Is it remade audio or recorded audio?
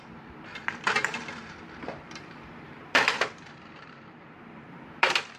remade